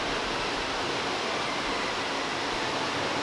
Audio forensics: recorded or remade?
recorded